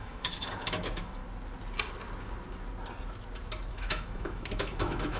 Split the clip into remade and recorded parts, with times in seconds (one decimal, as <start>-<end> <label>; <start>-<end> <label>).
0.0-1.2 remade; 1.2-3.7 recorded; 3.7-5.2 remade